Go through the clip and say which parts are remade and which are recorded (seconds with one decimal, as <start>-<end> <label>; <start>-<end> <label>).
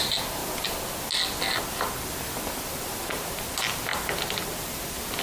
0.0-5.2 recorded